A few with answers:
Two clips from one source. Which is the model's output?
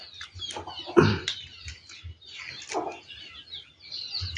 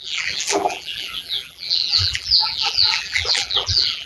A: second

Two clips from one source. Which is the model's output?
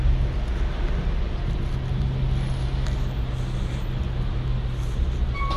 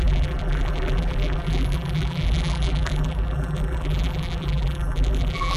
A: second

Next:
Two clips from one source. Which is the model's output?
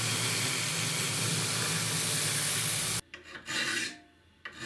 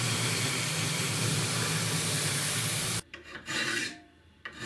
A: second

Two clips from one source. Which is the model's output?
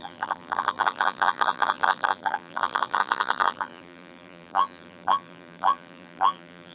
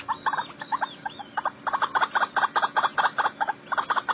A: first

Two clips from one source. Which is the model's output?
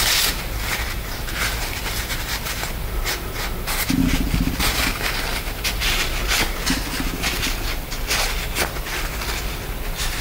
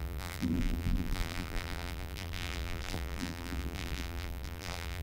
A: second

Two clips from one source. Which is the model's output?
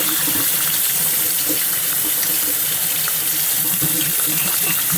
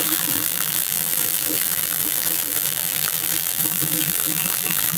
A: second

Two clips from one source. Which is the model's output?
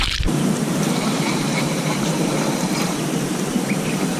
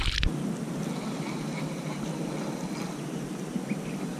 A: first